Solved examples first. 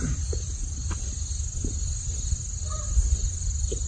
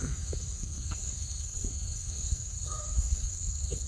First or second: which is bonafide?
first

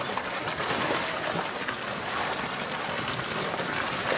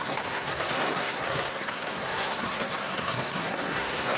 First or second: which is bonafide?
first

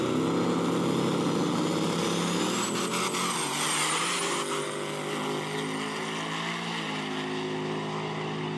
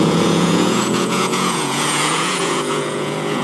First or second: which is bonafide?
first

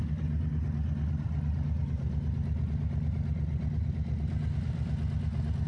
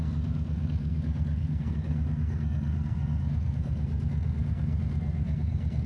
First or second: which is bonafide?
first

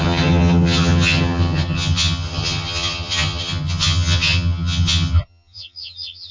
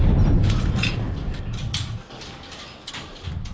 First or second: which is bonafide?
second